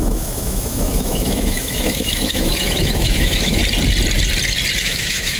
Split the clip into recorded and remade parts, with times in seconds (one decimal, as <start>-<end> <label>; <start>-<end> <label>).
0.0-3.6 remade; 3.6-4.8 recorded; 4.8-5.4 remade